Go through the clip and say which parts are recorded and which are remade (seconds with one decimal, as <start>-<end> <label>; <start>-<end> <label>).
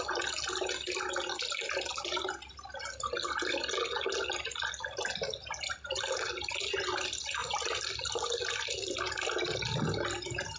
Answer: 0.0-10.6 recorded